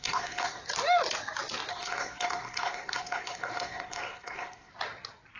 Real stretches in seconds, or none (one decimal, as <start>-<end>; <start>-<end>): 0.6-1.7; 4.7-5.4